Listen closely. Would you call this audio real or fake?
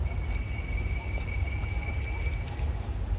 real